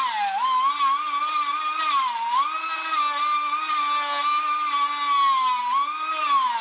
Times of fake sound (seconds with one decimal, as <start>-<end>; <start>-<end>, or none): none